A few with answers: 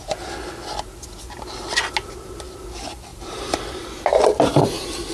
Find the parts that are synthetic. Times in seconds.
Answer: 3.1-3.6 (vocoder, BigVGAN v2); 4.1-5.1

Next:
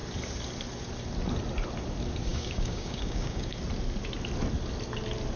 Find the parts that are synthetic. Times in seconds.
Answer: 2.3-3.6 (codec, DAC)

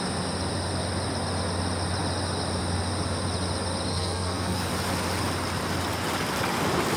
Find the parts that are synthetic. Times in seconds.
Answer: 3.9-4.7 (codec, SNAC)